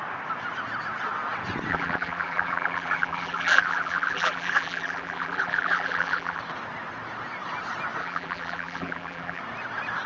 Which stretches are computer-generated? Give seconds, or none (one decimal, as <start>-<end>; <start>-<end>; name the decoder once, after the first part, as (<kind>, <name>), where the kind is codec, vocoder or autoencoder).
1.7-6.4 (vocoder, BigVGAN v2); 8.0-9.4